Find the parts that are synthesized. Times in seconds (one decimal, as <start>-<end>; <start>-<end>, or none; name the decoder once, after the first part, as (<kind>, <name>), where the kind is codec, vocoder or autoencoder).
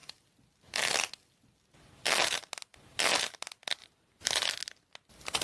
none